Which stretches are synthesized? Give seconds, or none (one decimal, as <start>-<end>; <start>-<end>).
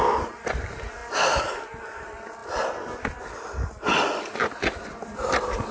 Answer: none